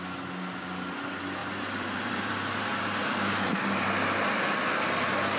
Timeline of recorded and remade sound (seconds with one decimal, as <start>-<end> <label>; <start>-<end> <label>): 0.0-1.4 recorded; 1.4-2.6 remade; 2.6-3.0 recorded; 3.0-3.5 remade; 3.5-5.4 recorded